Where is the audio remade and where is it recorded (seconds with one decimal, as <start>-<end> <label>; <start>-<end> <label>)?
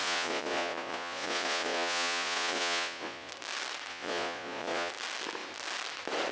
0.0-3.3 remade; 3.3-3.9 recorded; 3.9-4.9 remade; 4.9-6.3 recorded